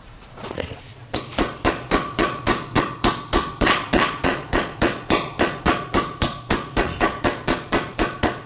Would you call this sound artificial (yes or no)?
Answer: yes